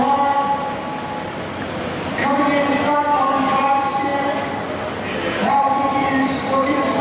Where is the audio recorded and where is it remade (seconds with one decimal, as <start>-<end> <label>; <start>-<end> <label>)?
0.0-7.0 recorded